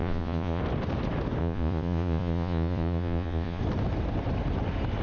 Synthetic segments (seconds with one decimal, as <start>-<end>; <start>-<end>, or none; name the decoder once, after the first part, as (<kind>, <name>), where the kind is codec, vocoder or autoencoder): 0.0-0.6 (vocoder, Vocos); 1.4-3.6